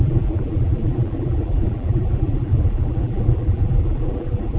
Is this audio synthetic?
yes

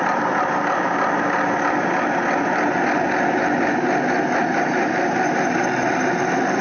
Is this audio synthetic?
no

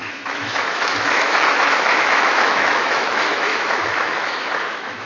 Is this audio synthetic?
yes